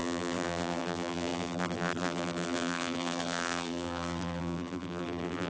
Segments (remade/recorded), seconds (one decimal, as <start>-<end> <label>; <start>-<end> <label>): 0.0-5.5 remade